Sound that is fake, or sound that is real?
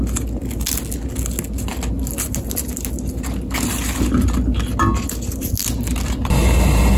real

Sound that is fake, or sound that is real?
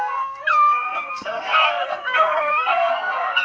fake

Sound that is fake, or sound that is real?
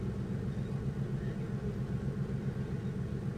real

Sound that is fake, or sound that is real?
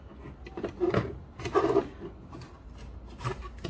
real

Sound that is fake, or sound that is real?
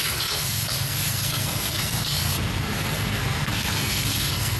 fake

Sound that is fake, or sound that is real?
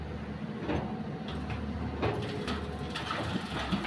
real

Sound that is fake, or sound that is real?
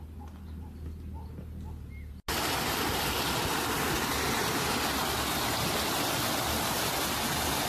real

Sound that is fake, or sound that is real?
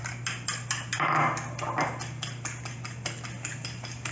real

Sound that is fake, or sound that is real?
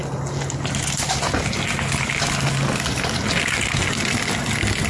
real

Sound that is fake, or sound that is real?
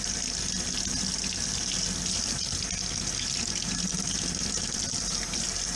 real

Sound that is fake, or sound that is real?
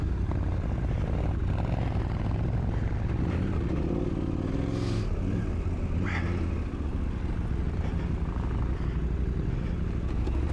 real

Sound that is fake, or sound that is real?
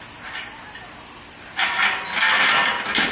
real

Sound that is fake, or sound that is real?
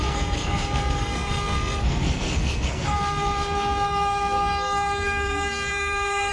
fake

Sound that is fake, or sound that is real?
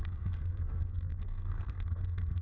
fake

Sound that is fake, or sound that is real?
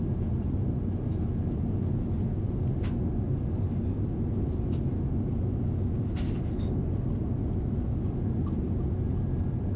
real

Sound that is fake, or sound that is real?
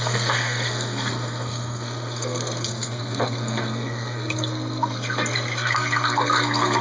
fake